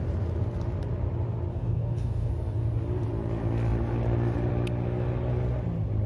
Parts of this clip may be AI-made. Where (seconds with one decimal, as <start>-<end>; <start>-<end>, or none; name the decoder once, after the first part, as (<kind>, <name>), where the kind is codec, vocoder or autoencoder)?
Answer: 1.5-2.3 (codec, DAC)

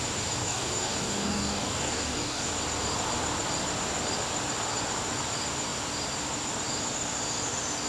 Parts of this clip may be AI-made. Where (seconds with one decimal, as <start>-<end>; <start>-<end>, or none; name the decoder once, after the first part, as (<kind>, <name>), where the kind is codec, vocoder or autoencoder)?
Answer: 0.4-2.5 (codec, DAC)

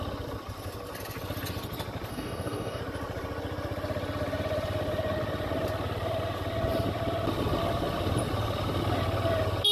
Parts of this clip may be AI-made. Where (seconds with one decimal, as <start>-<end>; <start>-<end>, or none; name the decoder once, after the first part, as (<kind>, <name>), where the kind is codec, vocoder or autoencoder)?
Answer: 2.1-2.8 (codec, DAC)